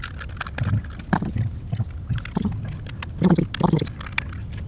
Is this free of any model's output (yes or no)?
yes